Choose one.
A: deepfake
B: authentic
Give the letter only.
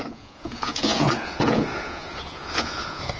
A